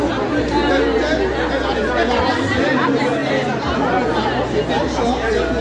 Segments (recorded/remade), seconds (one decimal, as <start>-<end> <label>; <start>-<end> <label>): 0.0-5.6 recorded